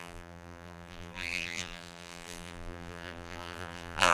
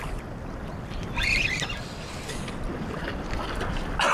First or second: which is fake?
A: first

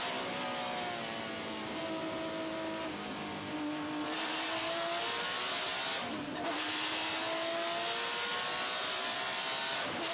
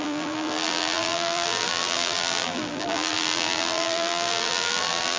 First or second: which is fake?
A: second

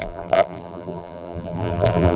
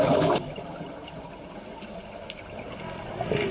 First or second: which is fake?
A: first